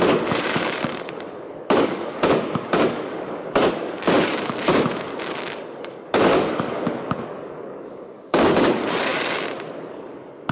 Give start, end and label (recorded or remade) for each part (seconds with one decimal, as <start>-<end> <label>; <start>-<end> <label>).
0.0-9.1 remade; 9.1-9.9 recorded; 9.9-10.5 remade